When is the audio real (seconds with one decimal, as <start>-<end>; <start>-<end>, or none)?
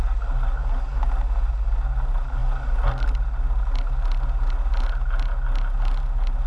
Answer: 0.0-6.5